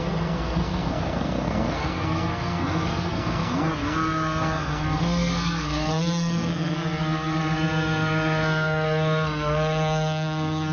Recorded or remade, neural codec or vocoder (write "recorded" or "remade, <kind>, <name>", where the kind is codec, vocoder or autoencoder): remade, codec, SNAC